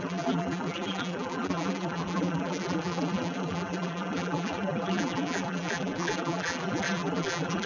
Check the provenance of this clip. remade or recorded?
remade